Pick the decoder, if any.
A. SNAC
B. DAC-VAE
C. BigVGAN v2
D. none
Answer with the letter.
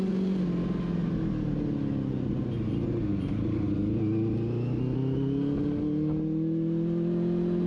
D